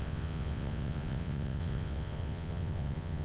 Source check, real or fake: fake